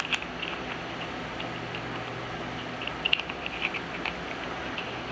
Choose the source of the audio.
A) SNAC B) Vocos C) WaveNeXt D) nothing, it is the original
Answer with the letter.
D